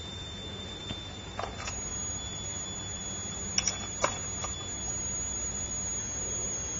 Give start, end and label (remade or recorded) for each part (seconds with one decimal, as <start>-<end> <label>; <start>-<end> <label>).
0.0-6.8 recorded